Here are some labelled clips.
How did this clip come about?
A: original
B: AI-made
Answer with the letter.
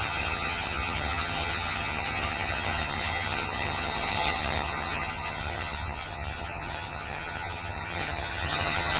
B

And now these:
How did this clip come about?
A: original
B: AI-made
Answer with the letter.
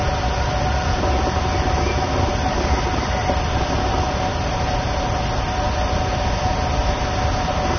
A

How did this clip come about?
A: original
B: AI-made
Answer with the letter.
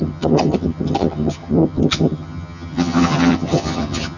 B